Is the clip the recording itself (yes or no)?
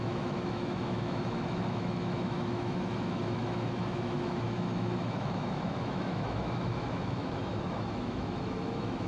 no